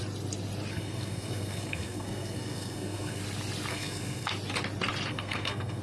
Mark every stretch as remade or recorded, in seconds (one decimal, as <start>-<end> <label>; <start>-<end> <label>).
0.0-0.7 recorded; 0.7-3.2 remade; 3.2-3.7 recorded; 3.7-4.3 remade; 4.3-5.1 recorded; 5.1-5.8 remade